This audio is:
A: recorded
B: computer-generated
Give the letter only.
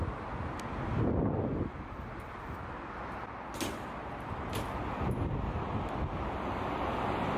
A